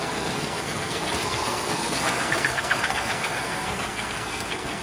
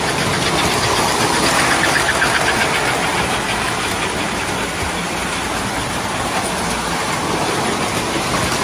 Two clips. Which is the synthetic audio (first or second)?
first